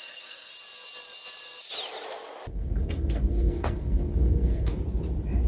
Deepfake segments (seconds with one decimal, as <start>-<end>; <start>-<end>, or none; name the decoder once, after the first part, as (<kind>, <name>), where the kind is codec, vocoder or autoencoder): 0.0-0.5 (codec, SNAC); 2.5-4.7